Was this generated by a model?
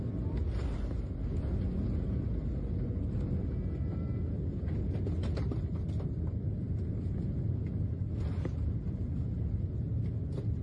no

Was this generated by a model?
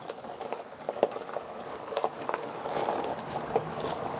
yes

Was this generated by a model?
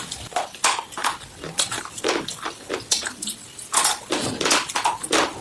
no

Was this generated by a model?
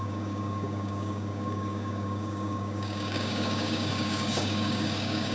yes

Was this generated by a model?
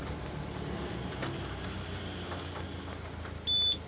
no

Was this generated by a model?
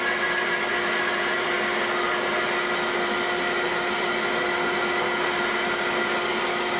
no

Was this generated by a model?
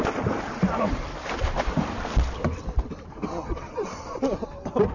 no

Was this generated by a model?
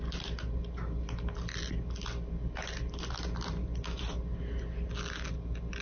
no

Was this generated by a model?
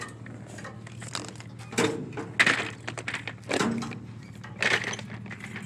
no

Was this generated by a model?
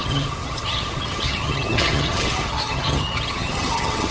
yes